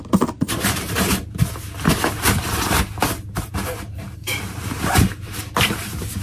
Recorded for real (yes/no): no